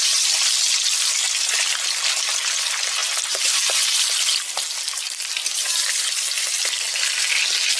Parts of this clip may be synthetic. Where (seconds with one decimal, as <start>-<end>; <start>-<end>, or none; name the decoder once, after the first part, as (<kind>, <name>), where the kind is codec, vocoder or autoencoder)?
none